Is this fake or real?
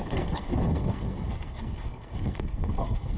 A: fake